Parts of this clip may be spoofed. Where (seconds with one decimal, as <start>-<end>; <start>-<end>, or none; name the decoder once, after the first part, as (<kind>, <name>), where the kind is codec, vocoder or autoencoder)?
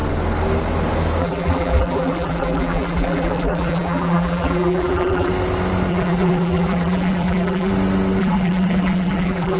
1.2-5.3 (vocoder, BigVGAN v2); 5.9-7.7; 8.2-9.6